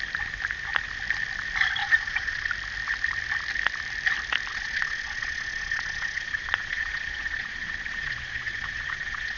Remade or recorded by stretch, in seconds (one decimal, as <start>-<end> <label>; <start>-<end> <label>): 0.0-1.8 recorded; 1.8-2.5 remade; 2.5-4.5 recorded; 4.5-9.4 remade